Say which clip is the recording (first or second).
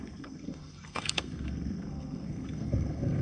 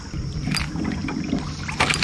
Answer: second